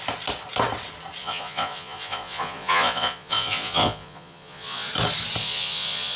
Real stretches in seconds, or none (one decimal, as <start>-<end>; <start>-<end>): 0.0-1.2; 4.9-5.4